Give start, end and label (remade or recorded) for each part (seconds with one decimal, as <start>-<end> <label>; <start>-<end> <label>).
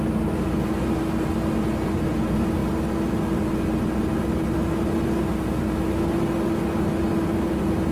0.0-7.9 recorded